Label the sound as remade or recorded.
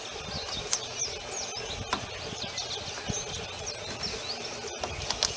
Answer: recorded